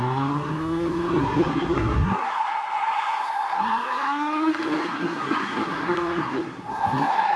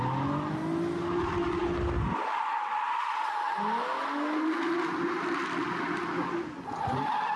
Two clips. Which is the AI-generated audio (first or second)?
first